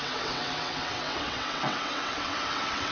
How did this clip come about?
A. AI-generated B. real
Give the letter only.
A